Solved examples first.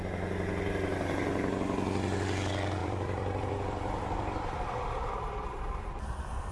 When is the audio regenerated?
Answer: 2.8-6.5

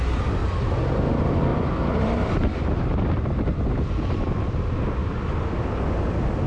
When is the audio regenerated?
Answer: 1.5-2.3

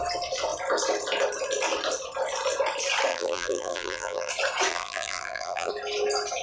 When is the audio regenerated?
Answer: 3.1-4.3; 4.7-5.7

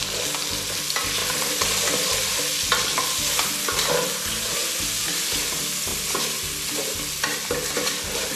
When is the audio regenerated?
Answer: 1.2-2.1